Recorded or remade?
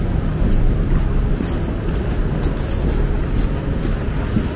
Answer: recorded